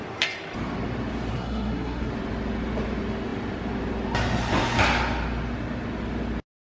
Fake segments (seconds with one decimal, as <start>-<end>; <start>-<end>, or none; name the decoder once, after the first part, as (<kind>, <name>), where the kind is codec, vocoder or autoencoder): 1.3-2.1 (codec, SNAC)